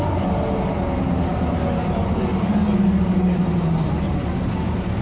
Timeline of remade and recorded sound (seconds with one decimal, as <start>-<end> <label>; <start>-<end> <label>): 0.0-5.0 recorded